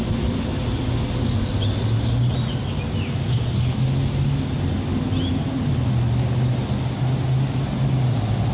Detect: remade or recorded recorded